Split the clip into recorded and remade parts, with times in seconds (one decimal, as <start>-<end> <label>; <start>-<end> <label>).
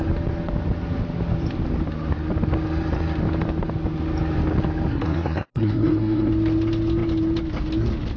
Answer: 0.0-4.9 recorded; 4.9-6.3 remade; 6.3-8.2 recorded